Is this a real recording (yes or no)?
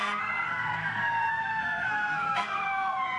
no